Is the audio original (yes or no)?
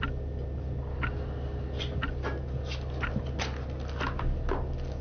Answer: yes